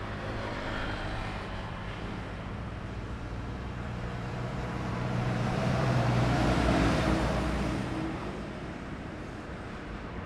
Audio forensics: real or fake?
fake